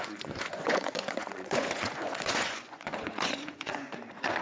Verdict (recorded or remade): remade